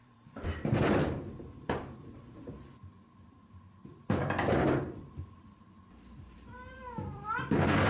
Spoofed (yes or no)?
yes